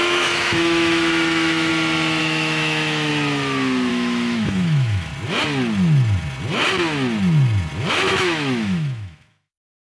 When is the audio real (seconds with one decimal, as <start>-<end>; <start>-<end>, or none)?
1.7-2.2; 3.1-3.9; 5.1-7.9